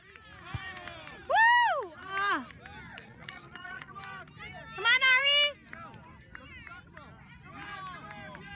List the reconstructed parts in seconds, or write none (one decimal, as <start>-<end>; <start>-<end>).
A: 2.9-3.9